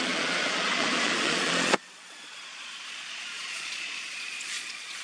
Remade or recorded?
remade